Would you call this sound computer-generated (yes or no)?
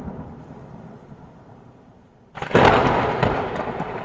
no